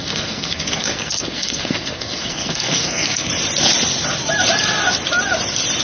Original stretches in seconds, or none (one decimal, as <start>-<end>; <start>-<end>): 3.3-5.8